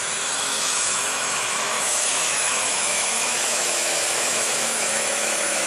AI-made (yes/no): yes